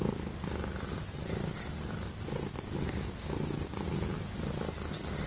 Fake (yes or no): no